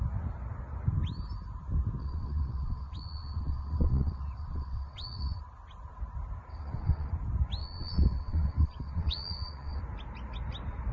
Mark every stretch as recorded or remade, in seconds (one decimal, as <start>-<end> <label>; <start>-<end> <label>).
0.0-2.0 recorded; 2.0-5.4 remade; 5.4-6.5 recorded; 6.5-7.1 remade; 7.1-7.6 recorded; 7.6-9.8 remade; 9.8-10.9 recorded